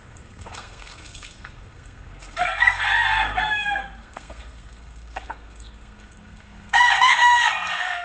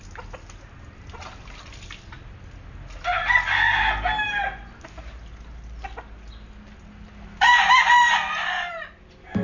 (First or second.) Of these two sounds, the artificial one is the first